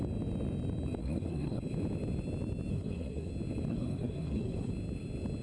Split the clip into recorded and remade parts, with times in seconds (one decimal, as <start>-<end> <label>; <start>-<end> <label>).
0.0-1.0 recorded; 1.0-1.6 remade; 1.6-2.7 recorded; 2.7-3.3 remade; 3.3-3.7 recorded; 3.7-4.7 remade; 4.7-5.4 recorded